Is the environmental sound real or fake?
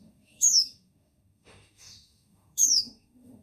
fake